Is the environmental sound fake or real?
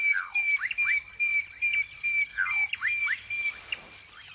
real